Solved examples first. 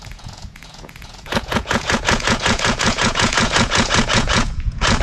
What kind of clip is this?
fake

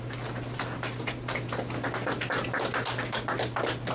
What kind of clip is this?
real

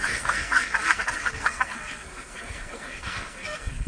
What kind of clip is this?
fake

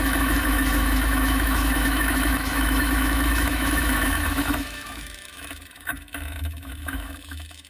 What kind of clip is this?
fake